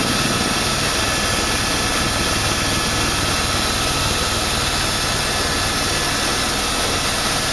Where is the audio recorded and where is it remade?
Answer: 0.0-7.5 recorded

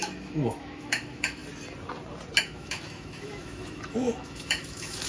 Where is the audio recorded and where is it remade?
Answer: 0.0-1.4 remade; 1.4-2.4 recorded; 2.4-5.1 remade

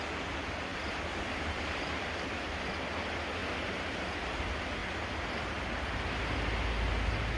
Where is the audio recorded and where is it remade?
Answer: 0.0-0.7 recorded; 0.7-2.4 remade; 2.4-4.8 recorded; 4.8-5.5 remade; 5.5-7.4 recorded

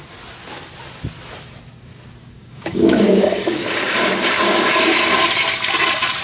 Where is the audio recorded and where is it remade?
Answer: 0.0-2.2 recorded; 2.2-5.0 remade; 5.0-6.2 recorded

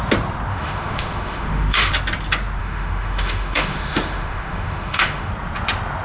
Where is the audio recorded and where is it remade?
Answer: 0.0-0.5 recorded; 0.5-1.9 remade; 1.9-2.6 recorded; 2.6-5.3 remade; 5.3-6.0 recorded

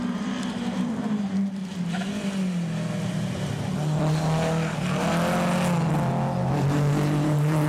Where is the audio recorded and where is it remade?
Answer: 0.0-1.6 remade; 1.6-3.1 recorded; 3.1-3.7 remade; 3.7-6.4 recorded; 6.4-7.7 remade